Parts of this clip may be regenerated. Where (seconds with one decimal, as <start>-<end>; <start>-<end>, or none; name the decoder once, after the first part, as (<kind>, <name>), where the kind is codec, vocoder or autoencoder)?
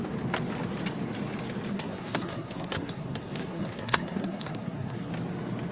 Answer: 1.7-5.1 (codec, SNAC)